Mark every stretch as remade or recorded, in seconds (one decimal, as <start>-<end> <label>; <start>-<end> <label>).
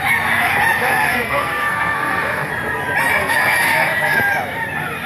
0.0-0.8 recorded; 0.8-2.5 remade; 2.5-3.2 recorded; 3.2-4.2 remade; 4.2-5.1 recorded